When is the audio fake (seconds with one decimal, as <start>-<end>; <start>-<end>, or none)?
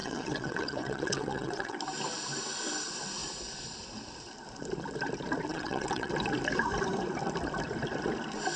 0.0-1.8; 5.5-6.1